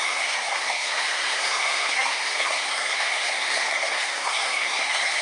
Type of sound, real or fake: fake